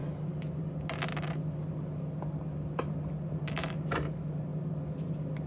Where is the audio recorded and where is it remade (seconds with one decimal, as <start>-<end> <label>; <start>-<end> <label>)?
0.0-5.5 recorded